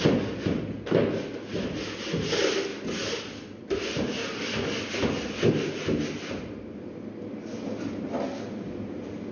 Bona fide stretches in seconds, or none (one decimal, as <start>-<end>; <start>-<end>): 0.0-9.3

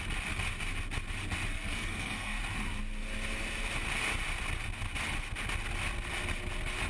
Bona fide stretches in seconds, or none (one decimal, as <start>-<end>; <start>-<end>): 0.0-1.5; 2.4-6.9